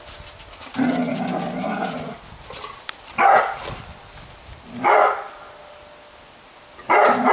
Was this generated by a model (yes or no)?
no